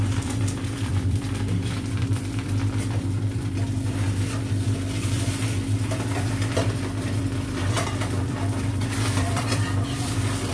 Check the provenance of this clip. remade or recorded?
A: remade